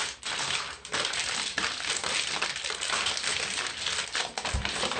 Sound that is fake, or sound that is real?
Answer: real